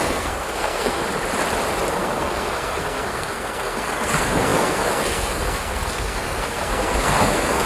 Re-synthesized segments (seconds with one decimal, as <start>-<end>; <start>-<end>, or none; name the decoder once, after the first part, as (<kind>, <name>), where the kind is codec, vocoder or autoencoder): 0.0-1.0 (codec, SNAC); 1.9-7.7